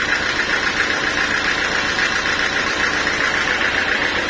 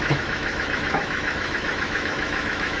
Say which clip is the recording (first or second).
first